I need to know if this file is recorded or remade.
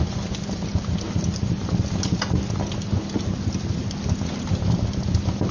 recorded